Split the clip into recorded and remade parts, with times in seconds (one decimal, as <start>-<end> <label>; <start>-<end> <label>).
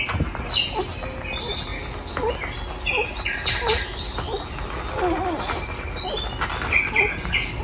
0.0-7.6 recorded